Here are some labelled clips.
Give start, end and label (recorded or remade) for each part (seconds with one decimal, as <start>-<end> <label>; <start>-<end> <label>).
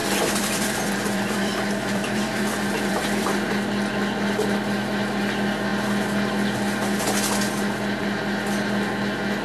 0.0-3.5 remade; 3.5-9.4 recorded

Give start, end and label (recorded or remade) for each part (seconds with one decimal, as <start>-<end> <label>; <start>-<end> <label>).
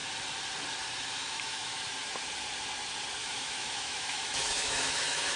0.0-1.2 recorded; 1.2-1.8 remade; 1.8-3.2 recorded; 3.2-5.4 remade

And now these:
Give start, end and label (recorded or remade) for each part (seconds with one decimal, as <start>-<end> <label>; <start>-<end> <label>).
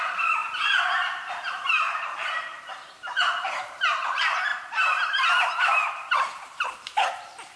0.0-4.5 remade; 4.5-5.4 recorded; 5.4-7.6 remade